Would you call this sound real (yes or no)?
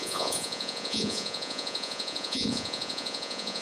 no